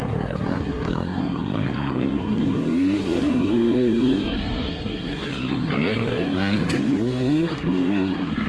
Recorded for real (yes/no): no